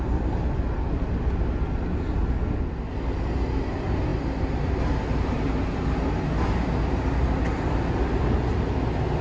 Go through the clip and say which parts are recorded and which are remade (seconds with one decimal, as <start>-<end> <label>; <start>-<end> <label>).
0.0-9.2 recorded